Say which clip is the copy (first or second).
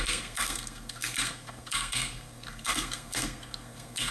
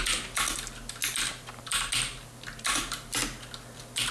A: first